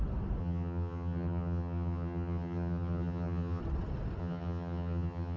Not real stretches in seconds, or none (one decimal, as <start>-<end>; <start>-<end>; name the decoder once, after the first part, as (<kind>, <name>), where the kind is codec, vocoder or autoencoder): 0.4-3.6 (vocoder, HiFi-GAN); 4.2-5.4